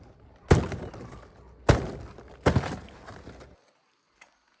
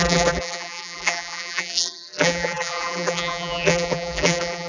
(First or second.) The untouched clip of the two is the first